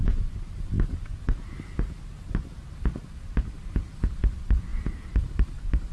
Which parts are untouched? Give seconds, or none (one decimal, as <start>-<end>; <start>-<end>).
0.0-5.9